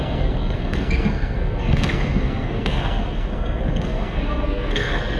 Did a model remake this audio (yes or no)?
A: yes